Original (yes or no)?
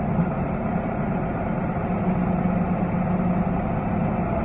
yes